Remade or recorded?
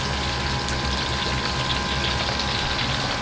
recorded